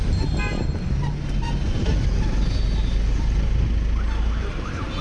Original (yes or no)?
yes